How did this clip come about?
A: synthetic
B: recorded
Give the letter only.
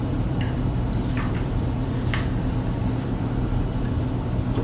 A